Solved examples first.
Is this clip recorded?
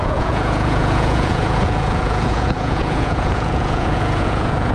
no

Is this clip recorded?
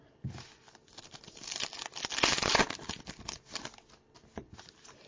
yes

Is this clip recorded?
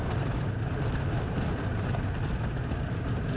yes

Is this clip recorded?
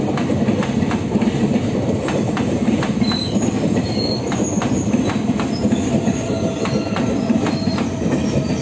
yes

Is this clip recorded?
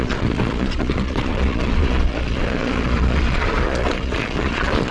no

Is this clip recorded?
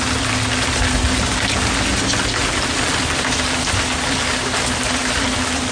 yes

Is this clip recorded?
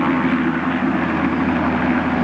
yes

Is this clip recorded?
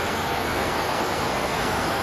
no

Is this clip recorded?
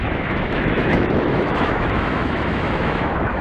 no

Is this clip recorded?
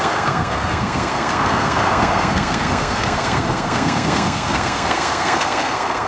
no